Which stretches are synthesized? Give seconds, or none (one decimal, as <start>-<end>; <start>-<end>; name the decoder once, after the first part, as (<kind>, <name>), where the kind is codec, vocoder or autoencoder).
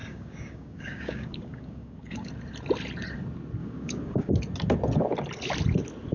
0.0-2.3 (codec, DAC); 3.6-4.3